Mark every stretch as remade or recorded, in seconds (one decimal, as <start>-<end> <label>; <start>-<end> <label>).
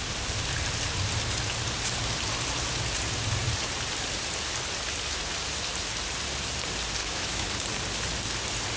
0.0-7.0 recorded; 7.0-7.5 remade; 7.5-8.8 recorded